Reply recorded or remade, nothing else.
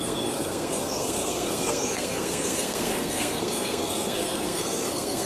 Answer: remade